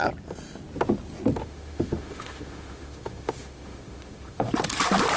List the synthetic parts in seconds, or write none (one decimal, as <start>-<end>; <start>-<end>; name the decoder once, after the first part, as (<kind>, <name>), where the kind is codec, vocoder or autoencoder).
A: 1.4-4.5 (autoencoder, DAC-VAE)